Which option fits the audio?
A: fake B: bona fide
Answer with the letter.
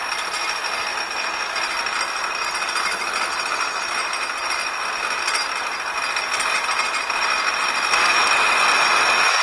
B